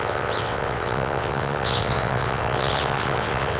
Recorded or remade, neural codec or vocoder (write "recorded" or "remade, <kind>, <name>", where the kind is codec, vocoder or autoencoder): remade, vocoder, WaveNeXt